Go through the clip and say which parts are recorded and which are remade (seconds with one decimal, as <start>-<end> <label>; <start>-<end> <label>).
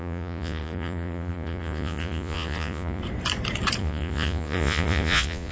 0.0-3.0 remade; 3.0-3.8 recorded; 3.8-5.5 remade